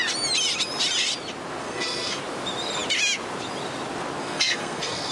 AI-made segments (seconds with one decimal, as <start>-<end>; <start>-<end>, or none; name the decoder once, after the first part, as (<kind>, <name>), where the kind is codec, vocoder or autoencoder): 1.6-2.2 (codec, SNAC); 4.2-5.1